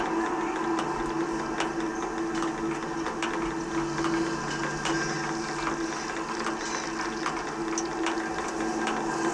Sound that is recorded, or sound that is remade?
recorded